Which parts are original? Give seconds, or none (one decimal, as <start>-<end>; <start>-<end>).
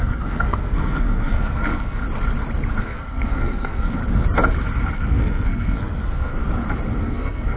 2.0-2.8; 4.0-4.9; 6.4-7.0